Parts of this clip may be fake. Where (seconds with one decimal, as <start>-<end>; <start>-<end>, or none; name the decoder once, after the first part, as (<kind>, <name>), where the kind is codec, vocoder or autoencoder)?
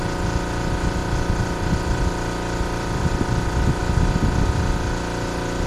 1.0-3.8 (vocoder, BigVGAN v2)